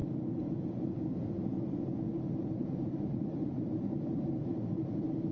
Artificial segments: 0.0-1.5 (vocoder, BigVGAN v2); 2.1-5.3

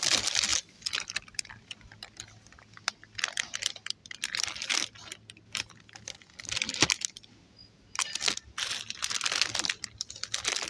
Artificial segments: none

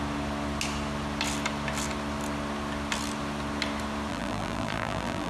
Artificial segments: 4.1-5.3 (vocoder, BigVGAN v2)

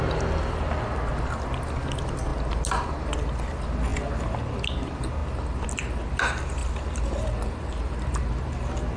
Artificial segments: 6.6-7.7 (vocoder, BigVGAN v2)

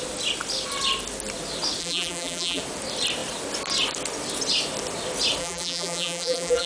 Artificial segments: 1.8-2.6 (vocoder, BigVGAN v2); 5.4-6.7